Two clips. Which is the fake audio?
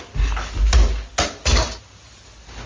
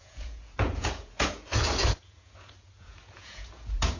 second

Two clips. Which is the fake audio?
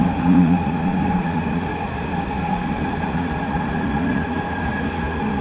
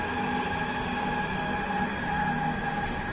first